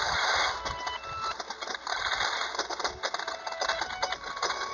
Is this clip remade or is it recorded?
recorded